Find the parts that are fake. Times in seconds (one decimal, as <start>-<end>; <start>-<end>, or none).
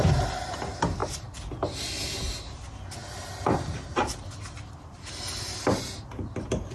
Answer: none